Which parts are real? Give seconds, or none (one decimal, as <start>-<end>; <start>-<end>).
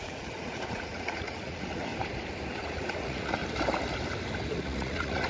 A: 1.9-2.7; 3.4-4.5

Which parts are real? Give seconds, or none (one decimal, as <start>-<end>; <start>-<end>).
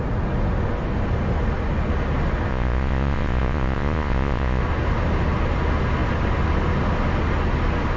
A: 0.0-2.5; 4.6-8.0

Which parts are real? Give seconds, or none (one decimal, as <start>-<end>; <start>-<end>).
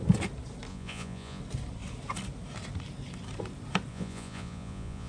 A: 0.0-0.7; 1.4-3.9